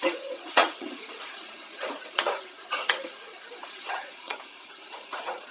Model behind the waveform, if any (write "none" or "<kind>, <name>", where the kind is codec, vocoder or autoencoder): vocoder, Vocos